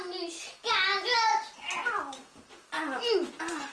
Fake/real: real